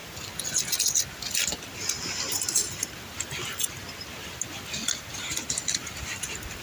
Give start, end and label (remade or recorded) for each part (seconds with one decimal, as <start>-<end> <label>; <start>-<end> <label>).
0.0-6.6 recorded